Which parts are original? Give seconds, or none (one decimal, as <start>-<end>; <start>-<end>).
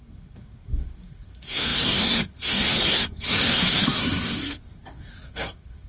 none